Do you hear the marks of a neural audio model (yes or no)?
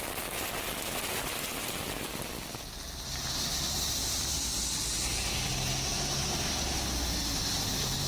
no